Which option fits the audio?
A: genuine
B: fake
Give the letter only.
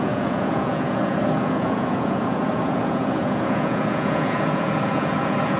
B